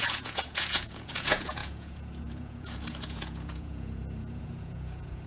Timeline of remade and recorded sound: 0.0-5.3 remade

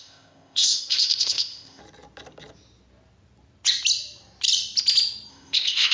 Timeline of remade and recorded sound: 0.0-1.8 remade; 1.8-5.3 recorded; 5.3-5.9 remade